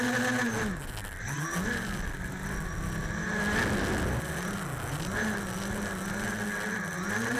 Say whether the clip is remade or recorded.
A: recorded